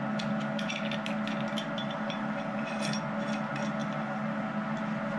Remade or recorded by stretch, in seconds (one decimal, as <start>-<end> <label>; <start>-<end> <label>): 0.0-1.8 recorded; 1.8-3.0 remade; 3.0-3.8 recorded; 3.8-4.4 remade; 4.4-5.2 recorded

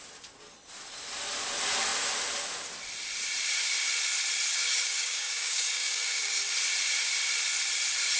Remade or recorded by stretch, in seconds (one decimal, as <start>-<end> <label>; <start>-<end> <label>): 0.0-4.5 recorded; 4.5-6.4 remade; 6.4-8.2 recorded

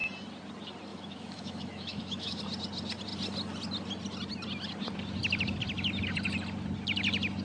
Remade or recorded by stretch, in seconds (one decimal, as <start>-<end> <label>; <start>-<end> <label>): 0.0-0.9 recorded; 0.9-2.4 remade; 2.4-7.4 recorded

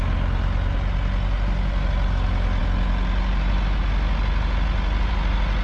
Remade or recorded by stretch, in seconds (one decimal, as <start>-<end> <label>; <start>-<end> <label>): 0.0-5.6 recorded

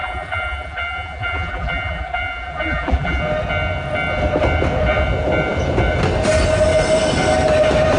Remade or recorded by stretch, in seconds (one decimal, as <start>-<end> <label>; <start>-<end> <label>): 0.0-3.2 remade; 3.2-8.0 recorded

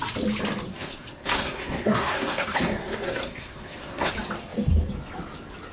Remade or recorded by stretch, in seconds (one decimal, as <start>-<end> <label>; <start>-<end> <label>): 0.0-0.7 recorded; 0.7-4.1 remade; 4.1-5.7 recorded

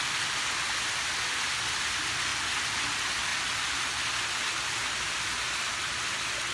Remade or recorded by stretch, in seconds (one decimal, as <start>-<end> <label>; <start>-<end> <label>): 0.0-6.5 recorded